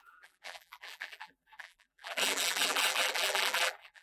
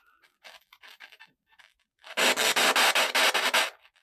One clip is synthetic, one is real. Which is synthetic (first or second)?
first